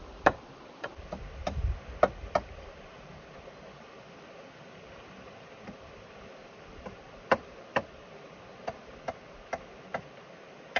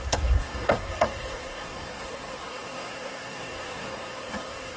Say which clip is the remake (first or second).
second